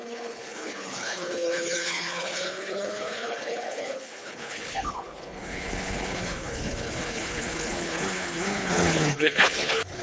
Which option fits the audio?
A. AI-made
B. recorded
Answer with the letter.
A